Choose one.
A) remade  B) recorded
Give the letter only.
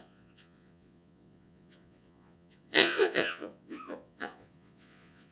A